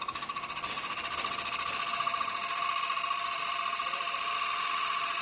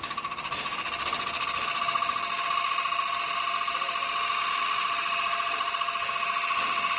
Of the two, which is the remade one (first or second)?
first